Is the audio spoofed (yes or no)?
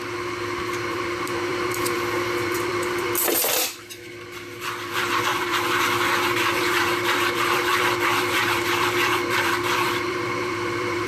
yes